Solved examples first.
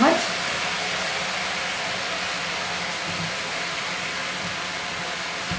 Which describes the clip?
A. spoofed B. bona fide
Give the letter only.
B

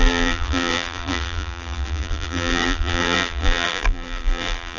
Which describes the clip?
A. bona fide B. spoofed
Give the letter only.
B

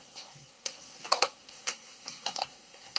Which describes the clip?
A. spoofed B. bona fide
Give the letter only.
A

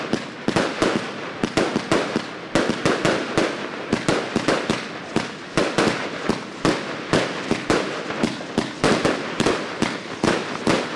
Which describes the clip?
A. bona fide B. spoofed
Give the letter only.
A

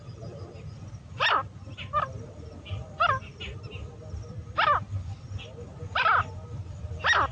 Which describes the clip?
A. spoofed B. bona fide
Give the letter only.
B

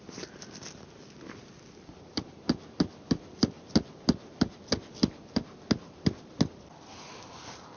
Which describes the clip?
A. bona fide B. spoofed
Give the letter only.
A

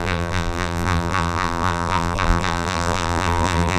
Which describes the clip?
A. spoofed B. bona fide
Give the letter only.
A